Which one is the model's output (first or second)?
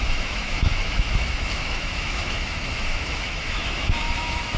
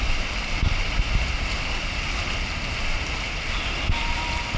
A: first